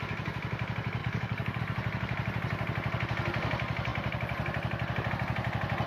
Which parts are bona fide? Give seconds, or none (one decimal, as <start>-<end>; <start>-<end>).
0.0-1.0; 1.6-5.9